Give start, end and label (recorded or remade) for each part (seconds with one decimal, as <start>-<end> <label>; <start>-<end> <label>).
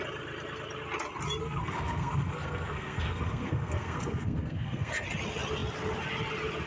0.0-1.4 recorded; 1.4-4.9 remade; 4.9-6.7 recorded